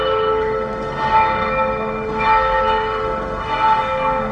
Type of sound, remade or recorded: remade